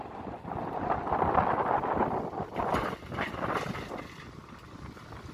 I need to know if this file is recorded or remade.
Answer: recorded